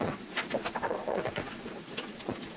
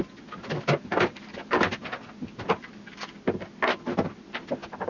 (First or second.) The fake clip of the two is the first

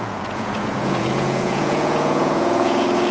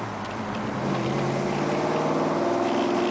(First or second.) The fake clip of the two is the first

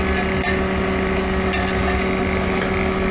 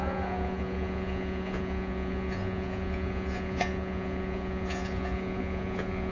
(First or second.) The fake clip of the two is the second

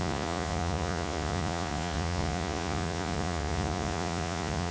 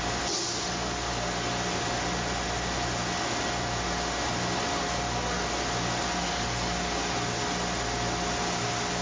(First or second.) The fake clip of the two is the first